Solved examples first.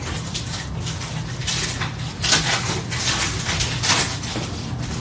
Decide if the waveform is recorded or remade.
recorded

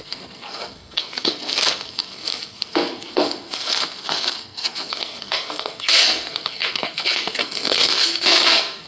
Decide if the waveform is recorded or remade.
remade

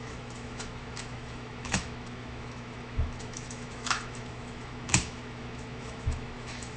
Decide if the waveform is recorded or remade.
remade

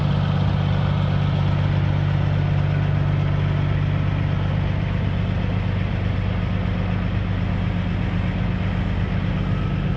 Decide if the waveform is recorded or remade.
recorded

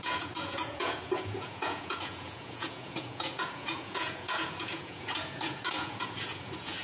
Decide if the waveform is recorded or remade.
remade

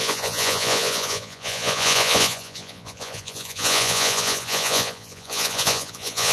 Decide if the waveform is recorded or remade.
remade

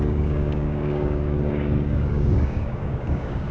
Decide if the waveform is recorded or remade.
remade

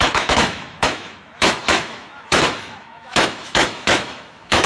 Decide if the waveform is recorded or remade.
remade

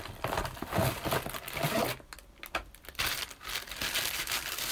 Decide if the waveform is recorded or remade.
recorded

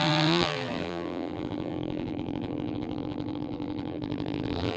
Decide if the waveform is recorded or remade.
remade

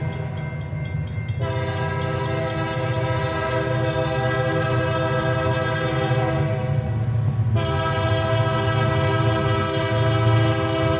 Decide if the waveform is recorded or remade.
recorded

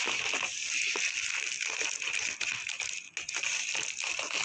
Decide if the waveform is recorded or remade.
recorded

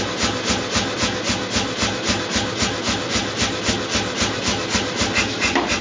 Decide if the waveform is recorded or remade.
recorded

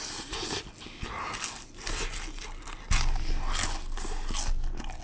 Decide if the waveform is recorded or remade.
recorded